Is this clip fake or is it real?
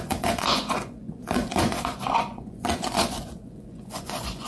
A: fake